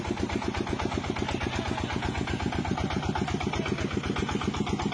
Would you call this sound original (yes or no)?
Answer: yes